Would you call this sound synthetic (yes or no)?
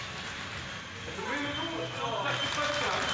no